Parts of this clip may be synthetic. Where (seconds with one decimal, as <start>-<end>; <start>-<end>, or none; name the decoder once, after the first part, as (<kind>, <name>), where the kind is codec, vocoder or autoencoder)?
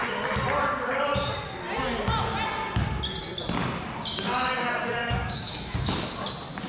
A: 5.0-6.1 (autoencoder, DAC-VAE)